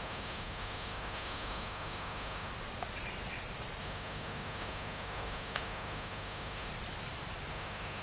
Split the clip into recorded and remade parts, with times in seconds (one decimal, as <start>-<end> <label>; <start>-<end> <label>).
0.0-2.5 remade; 2.5-3.8 recorded; 3.8-6.7 remade; 6.7-7.5 recorded; 7.5-8.0 remade